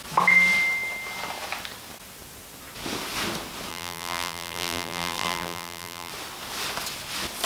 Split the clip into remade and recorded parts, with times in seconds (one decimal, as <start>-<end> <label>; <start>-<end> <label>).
0.0-3.7 recorded; 3.7-6.1 remade; 6.1-7.5 recorded